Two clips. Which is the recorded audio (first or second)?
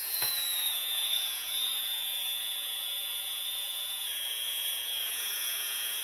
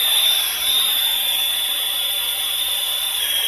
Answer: second